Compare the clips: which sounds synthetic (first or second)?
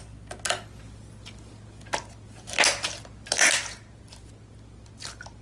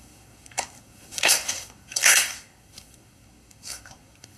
second